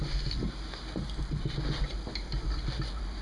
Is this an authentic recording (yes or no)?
yes